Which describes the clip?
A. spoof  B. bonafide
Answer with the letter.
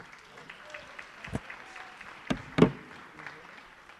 A